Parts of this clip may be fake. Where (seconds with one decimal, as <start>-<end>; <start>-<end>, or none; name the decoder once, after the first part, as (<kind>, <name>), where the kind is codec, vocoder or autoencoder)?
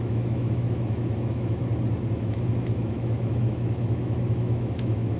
0.0-1.6 (autoencoder, DAC-VAE); 2.2-5.2